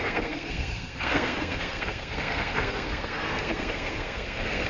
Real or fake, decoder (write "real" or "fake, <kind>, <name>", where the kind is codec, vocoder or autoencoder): fake, codec, SNAC